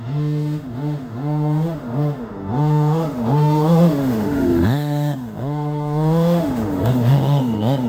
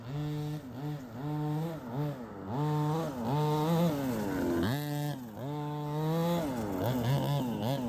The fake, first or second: first